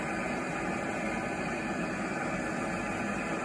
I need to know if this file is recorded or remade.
recorded